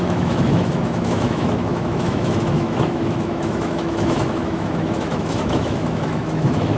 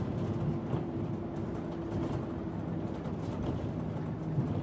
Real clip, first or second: second